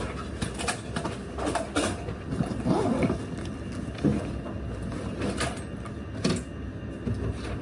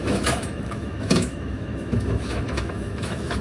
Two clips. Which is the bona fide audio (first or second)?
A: first